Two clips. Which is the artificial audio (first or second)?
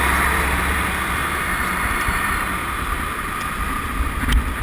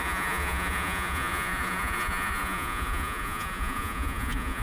second